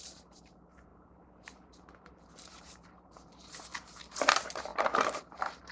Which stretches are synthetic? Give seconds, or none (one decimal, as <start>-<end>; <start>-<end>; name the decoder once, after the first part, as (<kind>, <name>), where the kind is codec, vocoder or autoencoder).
0.0-5.7 (vocoder, BigVGAN v2)